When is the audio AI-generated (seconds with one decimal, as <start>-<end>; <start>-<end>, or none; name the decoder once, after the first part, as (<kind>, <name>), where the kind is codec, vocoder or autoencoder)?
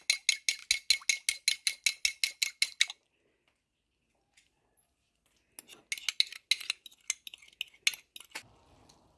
none